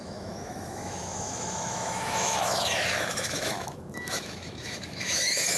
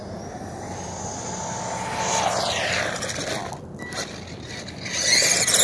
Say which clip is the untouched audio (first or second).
second